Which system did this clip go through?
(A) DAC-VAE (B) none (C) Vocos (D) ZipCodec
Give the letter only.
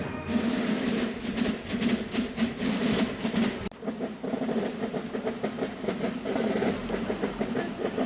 B